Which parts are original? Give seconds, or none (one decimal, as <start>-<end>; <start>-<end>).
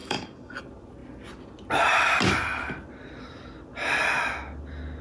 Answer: 0.6-5.0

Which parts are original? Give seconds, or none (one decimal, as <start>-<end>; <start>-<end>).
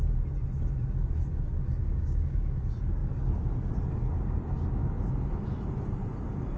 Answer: 0.0-1.8; 2.6-6.6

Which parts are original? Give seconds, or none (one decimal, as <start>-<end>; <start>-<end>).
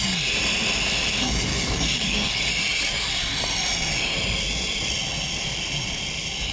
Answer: 0.0-1.5; 2.4-6.5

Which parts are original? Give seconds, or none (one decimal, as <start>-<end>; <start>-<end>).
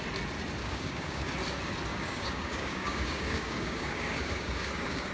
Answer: 0.0-0.6; 1.3-1.9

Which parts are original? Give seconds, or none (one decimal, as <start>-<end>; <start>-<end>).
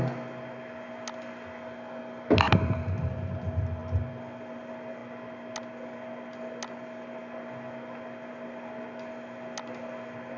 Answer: 0.0-10.4